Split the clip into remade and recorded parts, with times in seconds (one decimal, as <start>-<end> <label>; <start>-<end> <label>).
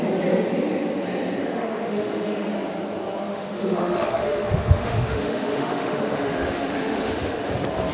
0.0-1.4 recorded; 1.4-2.5 remade; 2.5-3.3 recorded; 3.3-7.4 remade; 7.4-7.9 recorded